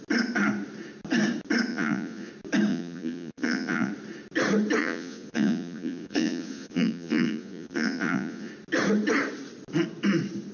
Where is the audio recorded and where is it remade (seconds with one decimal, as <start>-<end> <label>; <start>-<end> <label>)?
0.0-1.7 recorded; 1.7-2.3 remade; 2.3-2.7 recorded; 2.7-3.9 remade; 3.9-4.8 recorded; 4.8-8.5 remade; 8.5-10.5 recorded